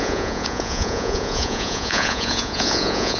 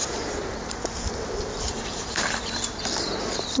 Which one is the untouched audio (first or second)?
second